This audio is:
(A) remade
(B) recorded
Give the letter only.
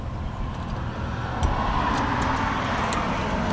B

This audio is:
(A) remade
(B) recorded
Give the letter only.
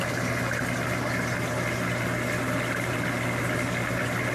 B